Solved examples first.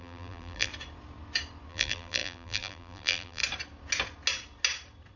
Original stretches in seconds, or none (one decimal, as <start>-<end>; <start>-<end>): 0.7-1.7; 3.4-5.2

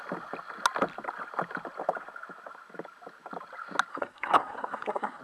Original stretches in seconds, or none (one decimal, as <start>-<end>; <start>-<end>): 0.0-3.9

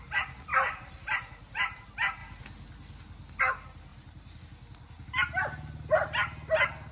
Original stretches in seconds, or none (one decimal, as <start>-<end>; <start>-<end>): 0.0-0.5; 1.8-3.9; 4.4-6.9

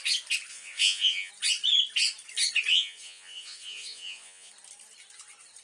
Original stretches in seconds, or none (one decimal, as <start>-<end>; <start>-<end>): 0.0-0.5; 1.3-2.7; 4.5-5.6